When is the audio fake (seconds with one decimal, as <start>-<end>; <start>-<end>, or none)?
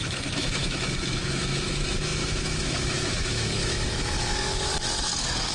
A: 0.0-4.7